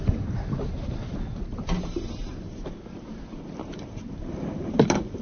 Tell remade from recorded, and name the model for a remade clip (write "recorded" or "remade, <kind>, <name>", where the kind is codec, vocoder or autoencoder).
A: recorded